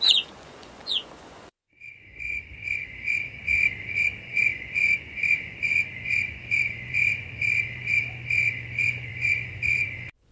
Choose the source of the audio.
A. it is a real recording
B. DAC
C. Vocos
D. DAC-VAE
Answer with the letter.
C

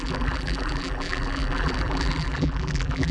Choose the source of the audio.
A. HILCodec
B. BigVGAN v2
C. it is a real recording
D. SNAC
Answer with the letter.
B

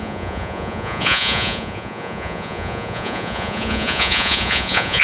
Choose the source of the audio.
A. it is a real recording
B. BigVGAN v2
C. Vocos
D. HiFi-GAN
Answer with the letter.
C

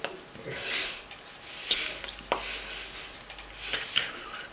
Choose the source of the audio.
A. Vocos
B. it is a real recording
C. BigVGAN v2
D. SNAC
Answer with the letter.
B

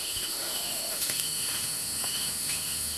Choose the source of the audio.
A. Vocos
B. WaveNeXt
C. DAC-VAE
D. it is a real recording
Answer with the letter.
C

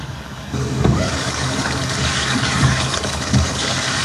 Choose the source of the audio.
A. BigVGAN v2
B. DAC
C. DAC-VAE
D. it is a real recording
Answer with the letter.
B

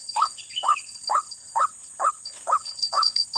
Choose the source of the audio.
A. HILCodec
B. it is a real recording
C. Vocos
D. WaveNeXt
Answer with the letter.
A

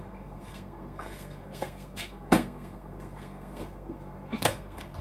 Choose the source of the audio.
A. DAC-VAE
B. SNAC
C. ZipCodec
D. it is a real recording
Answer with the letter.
B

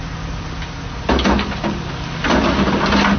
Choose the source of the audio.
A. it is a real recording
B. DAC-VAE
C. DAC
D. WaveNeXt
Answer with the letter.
A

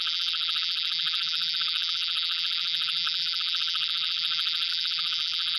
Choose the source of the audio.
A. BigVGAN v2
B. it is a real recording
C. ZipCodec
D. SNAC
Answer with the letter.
A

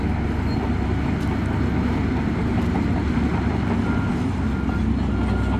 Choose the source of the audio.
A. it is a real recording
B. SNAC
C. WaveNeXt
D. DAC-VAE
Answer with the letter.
A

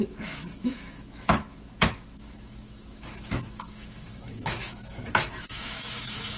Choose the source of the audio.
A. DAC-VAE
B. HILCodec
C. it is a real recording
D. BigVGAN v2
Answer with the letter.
A